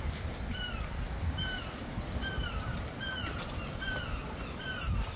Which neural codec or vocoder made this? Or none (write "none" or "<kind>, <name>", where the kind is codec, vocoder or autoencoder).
none